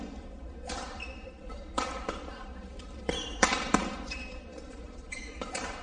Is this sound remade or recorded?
remade